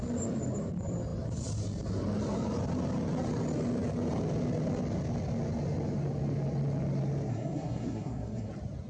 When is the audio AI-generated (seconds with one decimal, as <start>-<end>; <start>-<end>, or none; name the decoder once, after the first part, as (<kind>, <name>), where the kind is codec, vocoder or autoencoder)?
7.3-8.5 (codec, SNAC)